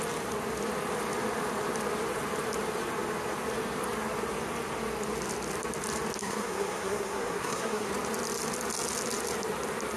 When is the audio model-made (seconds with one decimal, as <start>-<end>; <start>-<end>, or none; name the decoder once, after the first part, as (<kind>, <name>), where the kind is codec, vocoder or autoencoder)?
6.2-7.9 (codec, SNAC)

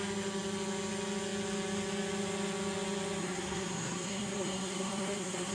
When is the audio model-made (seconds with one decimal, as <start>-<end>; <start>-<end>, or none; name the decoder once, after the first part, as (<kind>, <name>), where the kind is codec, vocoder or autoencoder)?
3.2-5.5 (codec, SNAC)